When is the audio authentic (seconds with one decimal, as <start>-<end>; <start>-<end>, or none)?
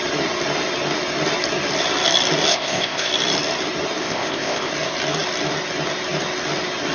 0.0-2.5; 3.1-4.0; 4.7-6.9